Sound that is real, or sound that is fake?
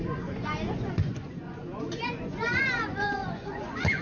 fake